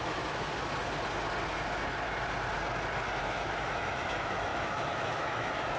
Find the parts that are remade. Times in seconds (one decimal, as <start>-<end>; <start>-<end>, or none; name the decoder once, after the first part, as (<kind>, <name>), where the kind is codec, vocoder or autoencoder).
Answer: 0.0-0.5 (autoencoder, DAC-VAE); 3.2-5.8